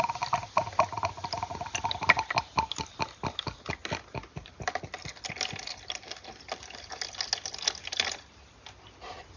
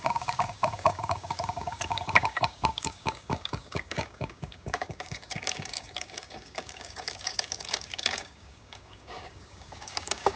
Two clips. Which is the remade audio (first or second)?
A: second